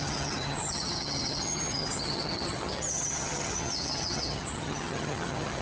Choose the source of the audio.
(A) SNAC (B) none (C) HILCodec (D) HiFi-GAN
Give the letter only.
D